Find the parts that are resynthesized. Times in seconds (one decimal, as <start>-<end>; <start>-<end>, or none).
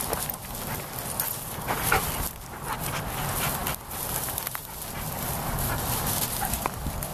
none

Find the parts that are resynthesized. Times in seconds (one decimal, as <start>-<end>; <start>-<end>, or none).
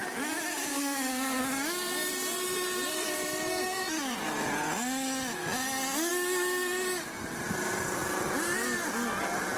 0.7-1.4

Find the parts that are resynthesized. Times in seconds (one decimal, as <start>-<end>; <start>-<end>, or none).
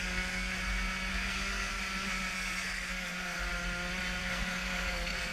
0.0-0.5; 1.1-1.7; 2.3-3.5; 4.2-5.3